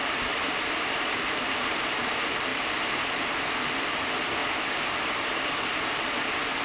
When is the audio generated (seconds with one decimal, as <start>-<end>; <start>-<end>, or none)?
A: none